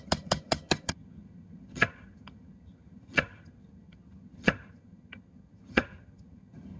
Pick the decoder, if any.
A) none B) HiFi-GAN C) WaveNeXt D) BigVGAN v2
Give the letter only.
B